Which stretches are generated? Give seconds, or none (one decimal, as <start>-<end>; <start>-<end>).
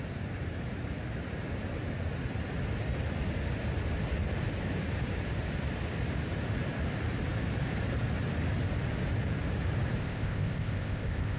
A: 10.0-11.4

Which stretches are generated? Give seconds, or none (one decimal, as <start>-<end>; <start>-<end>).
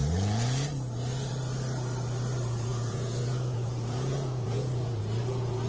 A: 2.7-5.0